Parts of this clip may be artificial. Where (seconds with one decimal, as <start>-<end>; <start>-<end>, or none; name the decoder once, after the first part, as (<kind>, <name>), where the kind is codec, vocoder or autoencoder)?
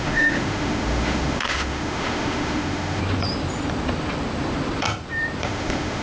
0.0-3.0 (autoencoder, DAC-VAE); 5.4-6.0